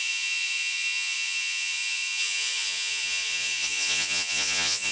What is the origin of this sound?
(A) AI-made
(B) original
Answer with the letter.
A